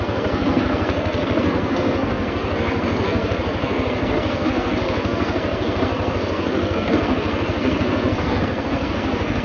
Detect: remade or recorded remade